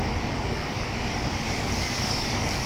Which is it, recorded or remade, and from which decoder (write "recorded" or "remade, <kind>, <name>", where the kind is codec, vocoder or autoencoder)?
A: remade, codec, DAC